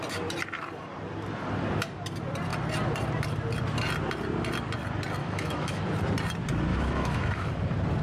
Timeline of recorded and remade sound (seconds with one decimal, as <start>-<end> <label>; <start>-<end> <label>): 0.0-5.2 recorded; 5.2-5.8 remade; 5.8-6.7 recorded; 6.7-7.5 remade; 7.5-8.0 recorded